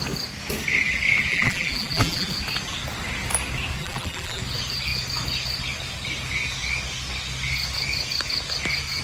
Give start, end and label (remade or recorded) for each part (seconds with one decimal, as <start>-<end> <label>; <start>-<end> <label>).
0.0-1.3 recorded; 1.3-2.3 remade; 2.3-3.8 recorded; 3.8-4.4 remade; 4.4-9.0 recorded